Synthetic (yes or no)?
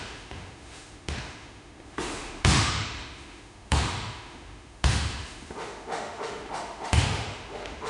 yes